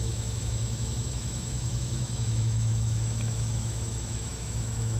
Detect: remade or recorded remade